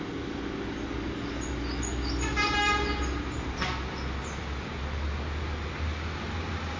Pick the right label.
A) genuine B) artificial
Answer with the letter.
A